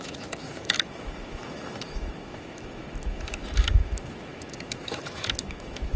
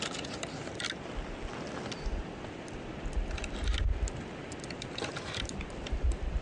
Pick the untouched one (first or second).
second